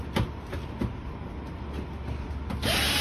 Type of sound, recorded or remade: recorded